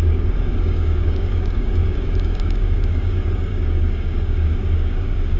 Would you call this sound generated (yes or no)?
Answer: yes